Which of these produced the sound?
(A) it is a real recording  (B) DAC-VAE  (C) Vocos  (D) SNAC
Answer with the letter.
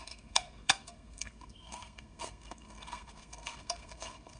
D